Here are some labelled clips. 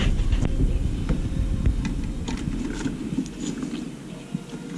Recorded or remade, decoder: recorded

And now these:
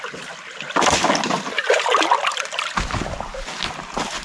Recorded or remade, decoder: recorded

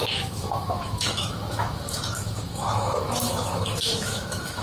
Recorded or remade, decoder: remade, autoencoder, DAC-VAE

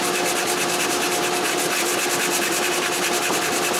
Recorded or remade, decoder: recorded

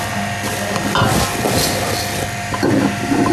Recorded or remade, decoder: recorded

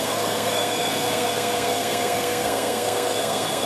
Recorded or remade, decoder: remade, codec, SNAC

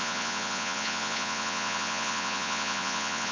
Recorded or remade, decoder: remade, vocoder, Vocos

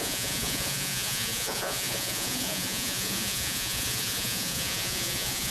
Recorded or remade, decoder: remade, vocoder, Vocos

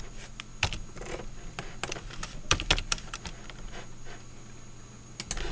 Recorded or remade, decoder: recorded